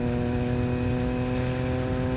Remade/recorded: recorded